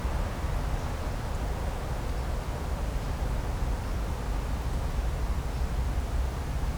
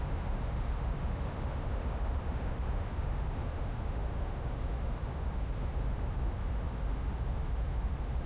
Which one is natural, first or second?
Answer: first